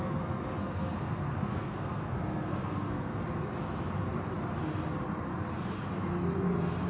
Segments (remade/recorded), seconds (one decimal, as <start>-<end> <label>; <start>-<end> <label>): 0.0-3.1 remade; 3.1-6.9 recorded